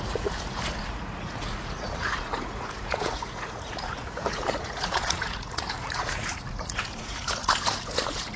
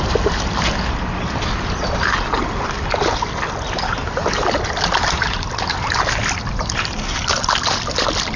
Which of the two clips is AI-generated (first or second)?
first